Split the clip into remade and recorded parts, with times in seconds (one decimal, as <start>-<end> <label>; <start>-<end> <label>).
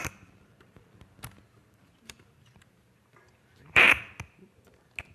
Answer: 0.0-0.9 remade; 0.9-1.6 recorded; 1.6-4.0 remade; 4.0-5.1 recorded